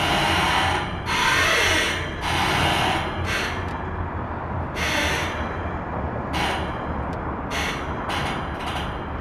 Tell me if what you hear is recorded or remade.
recorded